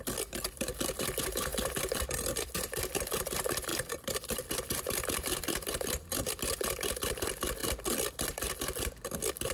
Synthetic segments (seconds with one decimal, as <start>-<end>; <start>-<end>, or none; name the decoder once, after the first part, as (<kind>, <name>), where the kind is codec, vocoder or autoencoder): 1.5-2.9 (vocoder, BigVGAN v2); 3.7-6.4